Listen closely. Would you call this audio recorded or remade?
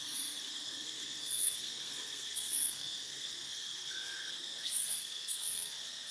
remade